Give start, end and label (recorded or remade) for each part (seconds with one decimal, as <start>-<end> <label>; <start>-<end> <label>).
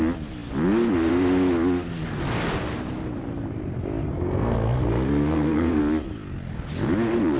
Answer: 0.0-4.1 recorded; 4.1-5.8 remade; 5.8-7.4 recorded